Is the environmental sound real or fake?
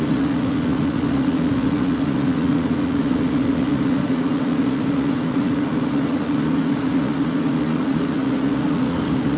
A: fake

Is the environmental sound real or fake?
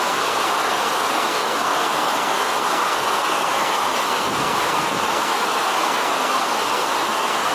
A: fake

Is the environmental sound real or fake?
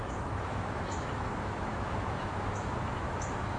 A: fake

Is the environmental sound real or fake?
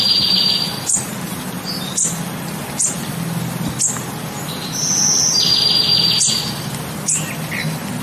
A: real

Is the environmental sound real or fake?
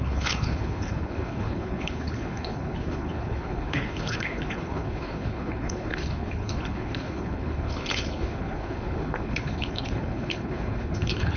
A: fake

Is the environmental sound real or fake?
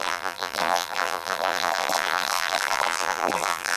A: fake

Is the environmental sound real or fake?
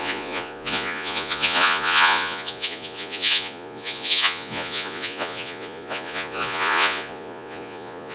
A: fake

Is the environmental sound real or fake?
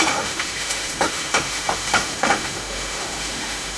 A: fake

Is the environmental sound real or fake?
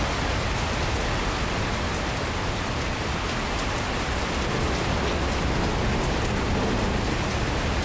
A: real